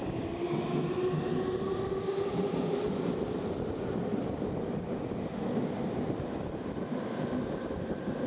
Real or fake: real